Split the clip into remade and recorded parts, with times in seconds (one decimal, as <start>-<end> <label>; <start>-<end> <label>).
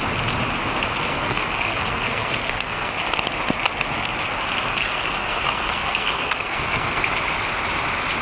0.0-1.1 recorded; 1.1-2.9 remade; 2.9-4.7 recorded; 4.7-7.0 remade; 7.0-8.2 recorded